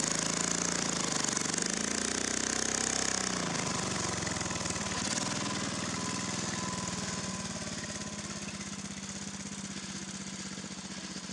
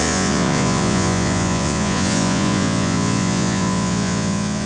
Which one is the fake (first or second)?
second